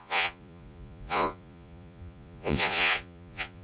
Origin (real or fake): fake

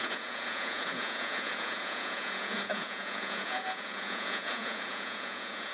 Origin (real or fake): fake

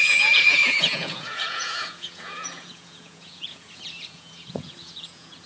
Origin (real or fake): fake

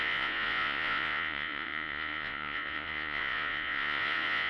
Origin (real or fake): fake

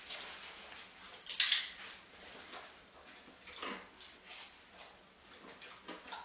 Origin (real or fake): real